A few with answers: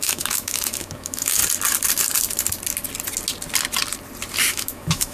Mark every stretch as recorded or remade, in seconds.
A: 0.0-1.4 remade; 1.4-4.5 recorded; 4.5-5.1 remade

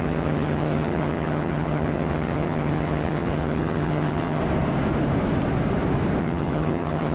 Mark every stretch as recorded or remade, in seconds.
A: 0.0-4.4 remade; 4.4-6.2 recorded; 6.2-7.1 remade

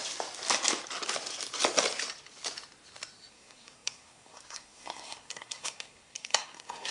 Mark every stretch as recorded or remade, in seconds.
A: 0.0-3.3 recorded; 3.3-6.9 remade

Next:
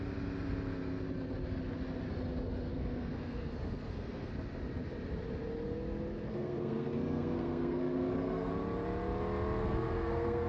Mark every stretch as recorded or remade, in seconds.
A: 0.0-2.7 recorded; 2.7-4.3 remade; 4.3-6.3 recorded; 6.3-8.5 remade; 8.5-9.6 recorded; 9.6-10.5 remade

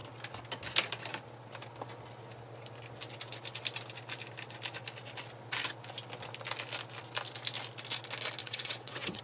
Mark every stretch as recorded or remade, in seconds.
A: 0.0-8.4 recorded; 8.4-9.2 remade

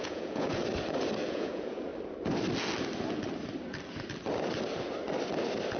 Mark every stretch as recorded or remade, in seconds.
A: 0.0-0.6 remade; 0.6-1.3 recorded; 1.3-1.9 remade; 1.9-5.8 recorded